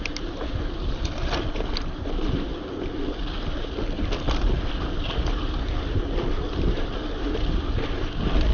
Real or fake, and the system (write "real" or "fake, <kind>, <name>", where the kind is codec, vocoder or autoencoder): real